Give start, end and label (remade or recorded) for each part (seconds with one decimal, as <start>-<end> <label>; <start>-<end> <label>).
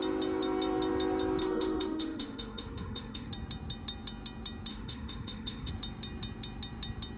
0.0-1.4 recorded; 1.4-3.3 remade; 3.3-4.7 recorded; 4.7-5.7 remade; 5.7-7.2 recorded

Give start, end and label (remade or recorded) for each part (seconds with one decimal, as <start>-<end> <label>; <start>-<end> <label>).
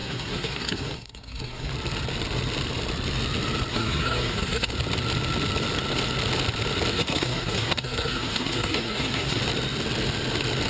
0.0-1.7 remade; 1.7-3.7 recorded; 3.7-4.7 remade; 4.7-6.9 recorded; 6.9-9.4 remade; 9.4-10.7 recorded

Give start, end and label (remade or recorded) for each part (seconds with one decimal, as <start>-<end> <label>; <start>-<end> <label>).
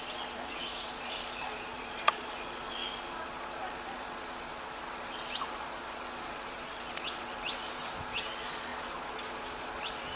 0.0-10.2 remade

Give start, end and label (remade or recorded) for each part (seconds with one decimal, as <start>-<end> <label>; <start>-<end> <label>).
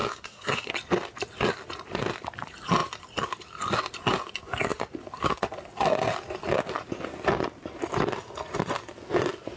0.0-0.7 remade; 0.7-9.6 recorded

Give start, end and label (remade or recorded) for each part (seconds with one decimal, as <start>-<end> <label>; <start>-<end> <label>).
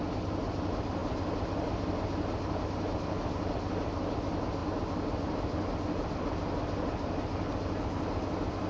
0.0-8.7 recorded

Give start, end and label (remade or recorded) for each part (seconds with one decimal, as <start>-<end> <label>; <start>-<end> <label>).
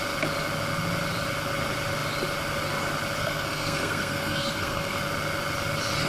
0.0-3.2 recorded; 3.2-5.0 remade; 5.0-6.1 recorded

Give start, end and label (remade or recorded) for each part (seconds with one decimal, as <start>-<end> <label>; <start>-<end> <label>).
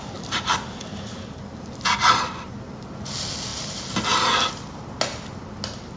0.0-6.0 recorded